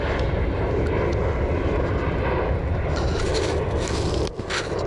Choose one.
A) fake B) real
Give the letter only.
B